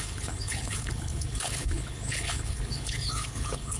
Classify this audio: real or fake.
fake